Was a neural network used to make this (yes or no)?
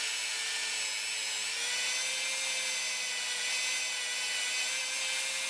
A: no